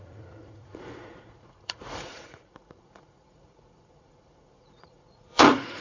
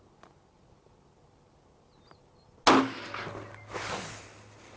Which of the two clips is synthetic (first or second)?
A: first